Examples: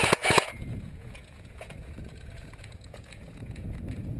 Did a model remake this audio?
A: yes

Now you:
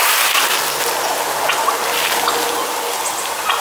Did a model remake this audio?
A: no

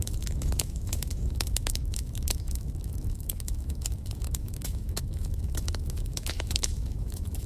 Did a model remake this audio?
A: yes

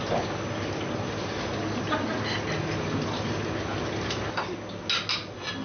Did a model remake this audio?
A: no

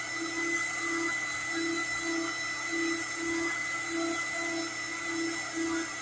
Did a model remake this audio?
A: no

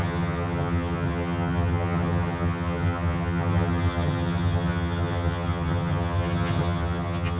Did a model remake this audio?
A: yes